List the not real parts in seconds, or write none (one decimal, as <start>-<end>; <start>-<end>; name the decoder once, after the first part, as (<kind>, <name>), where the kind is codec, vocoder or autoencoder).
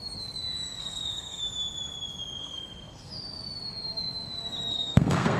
0.8-1.4 (codec, SNAC); 2.4-3.1; 4.7-5.4